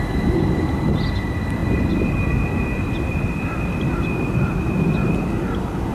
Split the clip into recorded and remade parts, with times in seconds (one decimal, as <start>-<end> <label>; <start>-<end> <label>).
0.0-5.9 recorded